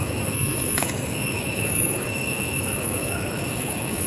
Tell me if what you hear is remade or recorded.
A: remade